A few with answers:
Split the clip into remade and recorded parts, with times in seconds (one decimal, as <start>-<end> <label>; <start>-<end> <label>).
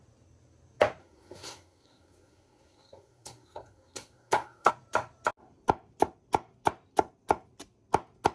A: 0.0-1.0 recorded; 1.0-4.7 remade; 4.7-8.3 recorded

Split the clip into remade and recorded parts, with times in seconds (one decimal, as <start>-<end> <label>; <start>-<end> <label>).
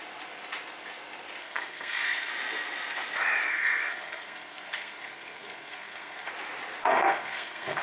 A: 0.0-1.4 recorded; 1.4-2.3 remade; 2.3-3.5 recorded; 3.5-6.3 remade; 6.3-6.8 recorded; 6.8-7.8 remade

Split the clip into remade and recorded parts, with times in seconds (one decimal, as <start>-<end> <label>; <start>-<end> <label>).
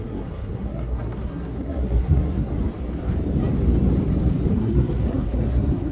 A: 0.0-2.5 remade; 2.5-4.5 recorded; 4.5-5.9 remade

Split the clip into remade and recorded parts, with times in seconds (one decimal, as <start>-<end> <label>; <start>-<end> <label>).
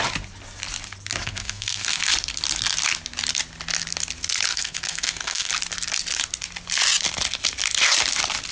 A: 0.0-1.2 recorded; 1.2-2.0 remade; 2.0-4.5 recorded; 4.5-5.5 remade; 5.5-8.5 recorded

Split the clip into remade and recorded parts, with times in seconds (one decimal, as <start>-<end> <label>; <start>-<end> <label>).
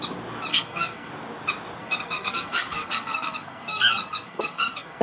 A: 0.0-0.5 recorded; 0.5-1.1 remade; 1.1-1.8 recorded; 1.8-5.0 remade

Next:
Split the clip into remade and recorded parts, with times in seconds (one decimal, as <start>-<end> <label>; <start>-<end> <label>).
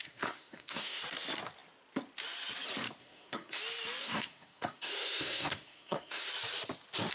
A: 0.0-1.0 remade; 1.0-3.0 recorded; 3.0-3.6 remade; 3.6-4.0 recorded; 4.0-6.3 remade; 6.3-7.1 recorded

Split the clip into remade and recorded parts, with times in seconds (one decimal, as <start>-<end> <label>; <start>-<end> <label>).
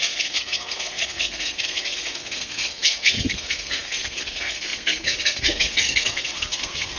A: 0.0-7.0 remade